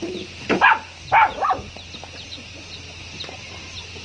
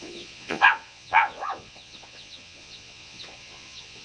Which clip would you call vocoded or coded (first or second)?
second